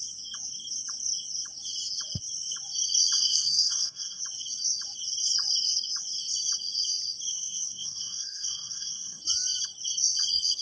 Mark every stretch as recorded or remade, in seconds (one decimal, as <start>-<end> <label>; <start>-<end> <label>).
0.0-3.2 recorded; 3.2-4.2 remade; 4.2-7.3 recorded; 7.3-9.2 remade; 9.2-10.6 recorded